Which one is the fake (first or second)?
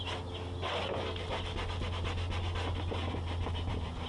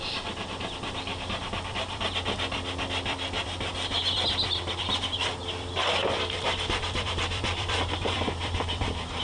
second